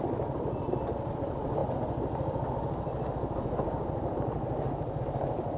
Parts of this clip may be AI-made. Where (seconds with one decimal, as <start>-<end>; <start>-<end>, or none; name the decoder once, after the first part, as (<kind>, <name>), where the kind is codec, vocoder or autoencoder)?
none